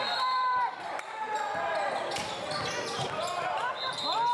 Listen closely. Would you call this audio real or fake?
real